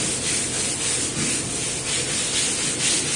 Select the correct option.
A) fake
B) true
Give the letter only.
B